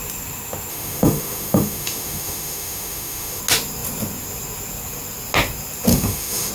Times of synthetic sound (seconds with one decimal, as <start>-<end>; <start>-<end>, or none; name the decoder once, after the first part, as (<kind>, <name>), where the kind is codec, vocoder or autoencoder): 0.7-3.4 (autoencoder, DAC-VAE); 5.9-6.5